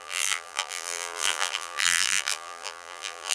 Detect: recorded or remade remade